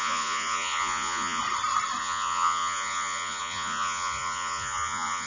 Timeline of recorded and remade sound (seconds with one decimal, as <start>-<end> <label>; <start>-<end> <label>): 0.0-1.4 remade; 1.4-2.0 recorded; 2.0-5.3 remade